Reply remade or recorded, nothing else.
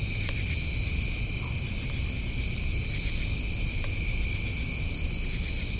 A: recorded